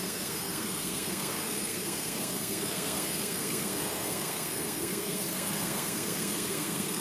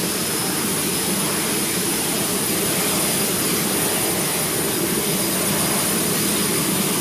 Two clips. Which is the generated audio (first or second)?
first